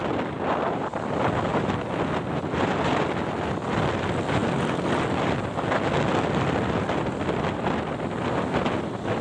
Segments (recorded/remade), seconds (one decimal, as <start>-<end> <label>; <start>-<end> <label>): 0.0-9.2 recorded